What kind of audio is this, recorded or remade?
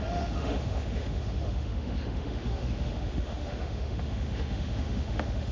remade